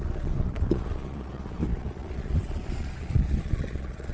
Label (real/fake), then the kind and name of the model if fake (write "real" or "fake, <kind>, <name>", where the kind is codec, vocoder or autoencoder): fake, vocoder, Vocos